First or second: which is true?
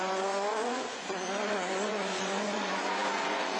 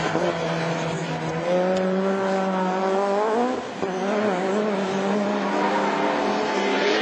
second